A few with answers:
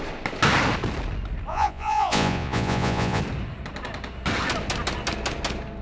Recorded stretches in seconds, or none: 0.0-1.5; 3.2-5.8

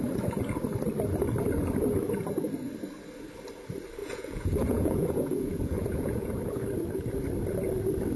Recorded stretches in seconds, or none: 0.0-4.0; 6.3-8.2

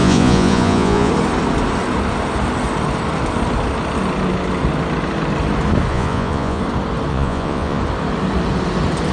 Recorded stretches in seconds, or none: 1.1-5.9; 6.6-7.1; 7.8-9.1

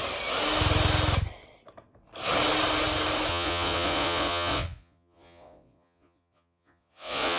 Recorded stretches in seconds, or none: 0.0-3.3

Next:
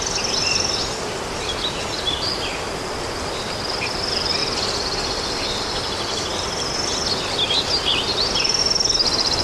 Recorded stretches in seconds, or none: 0.0-9.4